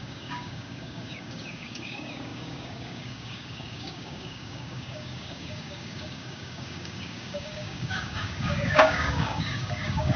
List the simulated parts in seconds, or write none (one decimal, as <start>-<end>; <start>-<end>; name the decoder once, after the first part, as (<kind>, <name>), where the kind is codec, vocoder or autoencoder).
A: 0.0-10.2 (codec, DAC)